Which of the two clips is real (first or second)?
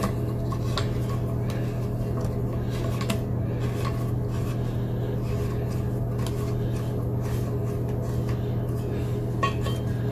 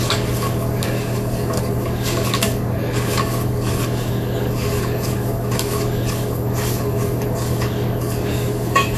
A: first